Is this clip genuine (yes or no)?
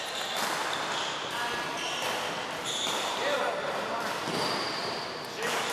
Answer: yes